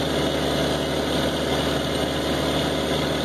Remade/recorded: recorded